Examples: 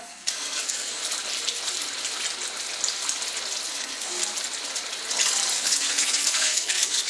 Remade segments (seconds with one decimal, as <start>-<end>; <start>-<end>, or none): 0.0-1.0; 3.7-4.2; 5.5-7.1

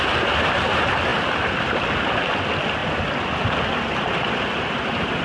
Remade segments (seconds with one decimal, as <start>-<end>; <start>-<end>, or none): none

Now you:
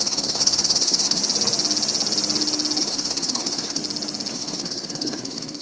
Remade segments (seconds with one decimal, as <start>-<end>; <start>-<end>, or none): 0.0-1.2; 2.8-3.8; 4.3-5.6

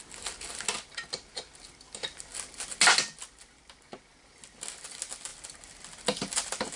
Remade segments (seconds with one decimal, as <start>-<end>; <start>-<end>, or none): none